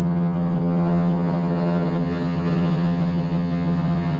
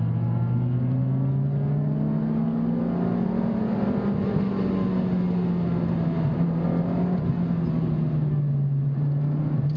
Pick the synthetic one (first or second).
first